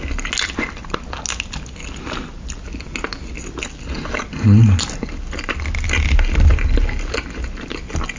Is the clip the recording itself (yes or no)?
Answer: yes